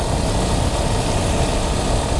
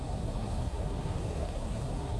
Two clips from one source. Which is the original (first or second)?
first